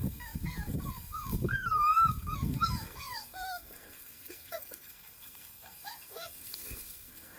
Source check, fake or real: fake